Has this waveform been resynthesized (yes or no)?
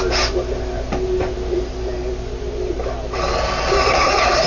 no